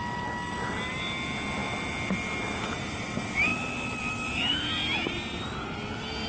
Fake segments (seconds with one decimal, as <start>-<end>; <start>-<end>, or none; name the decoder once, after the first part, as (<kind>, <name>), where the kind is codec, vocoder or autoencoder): none